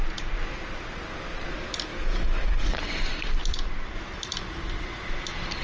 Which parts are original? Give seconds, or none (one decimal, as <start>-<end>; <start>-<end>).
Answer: 0.0-1.9; 2.8-5.6

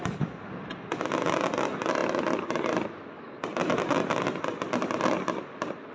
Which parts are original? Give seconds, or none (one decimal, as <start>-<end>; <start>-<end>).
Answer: 0.0-5.9

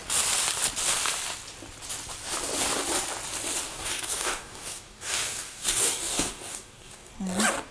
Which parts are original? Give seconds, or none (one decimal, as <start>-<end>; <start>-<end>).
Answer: 0.0-3.7; 7.1-7.7